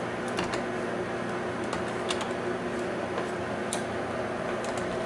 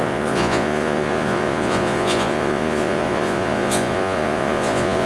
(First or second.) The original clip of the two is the first